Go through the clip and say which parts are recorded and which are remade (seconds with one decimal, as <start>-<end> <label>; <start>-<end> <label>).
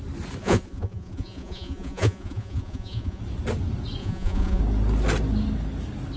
0.0-0.4 recorded; 0.4-3.2 remade; 3.2-4.0 recorded; 4.0-4.6 remade; 4.6-6.2 recorded